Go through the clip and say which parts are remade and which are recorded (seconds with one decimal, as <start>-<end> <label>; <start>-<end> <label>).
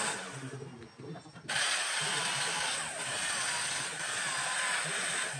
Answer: 0.0-5.4 recorded